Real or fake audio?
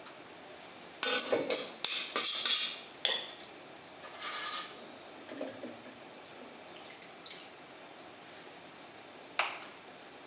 real